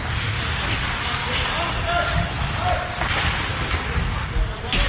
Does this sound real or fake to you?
real